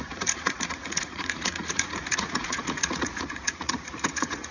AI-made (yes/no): yes